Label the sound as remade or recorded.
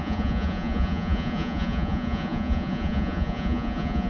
remade